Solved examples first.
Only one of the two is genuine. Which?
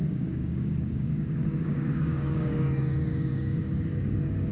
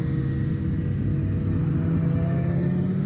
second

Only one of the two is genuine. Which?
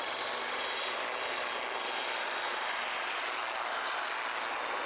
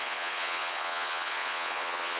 first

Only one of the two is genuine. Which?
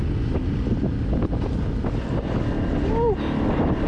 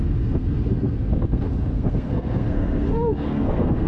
first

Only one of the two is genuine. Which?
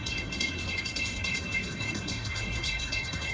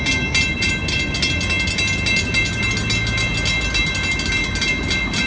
second